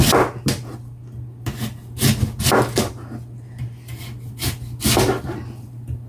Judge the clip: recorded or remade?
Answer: recorded